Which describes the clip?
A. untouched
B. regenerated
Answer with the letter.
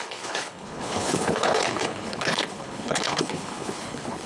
B